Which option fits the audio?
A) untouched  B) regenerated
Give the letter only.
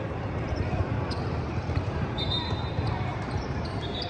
B